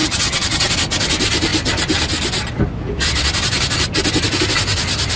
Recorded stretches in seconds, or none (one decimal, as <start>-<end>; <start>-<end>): 0.7-5.2